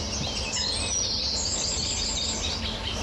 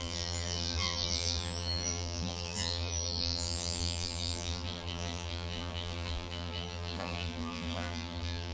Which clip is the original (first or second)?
first